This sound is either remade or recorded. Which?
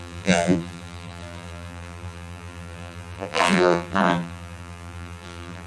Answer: remade